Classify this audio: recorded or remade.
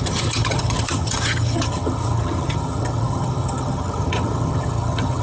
remade